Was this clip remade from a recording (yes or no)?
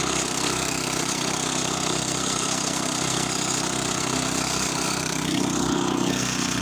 yes